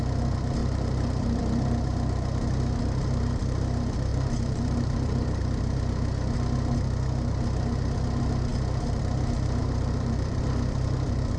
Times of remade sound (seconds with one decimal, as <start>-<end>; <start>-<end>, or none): 0.6-1.4; 4.1-5.4; 9.6-10.4